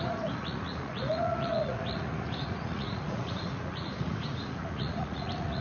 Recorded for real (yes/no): no